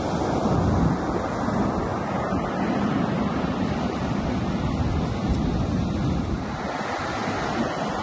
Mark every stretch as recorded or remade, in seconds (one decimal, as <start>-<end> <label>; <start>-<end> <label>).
0.0-8.0 recorded